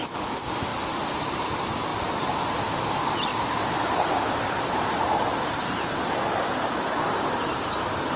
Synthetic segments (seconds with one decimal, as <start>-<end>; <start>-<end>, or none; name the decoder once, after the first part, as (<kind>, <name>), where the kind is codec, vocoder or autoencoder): 0.7-1.5 (vocoder, BigVGAN v2); 1.9-2.6; 3.3-7.7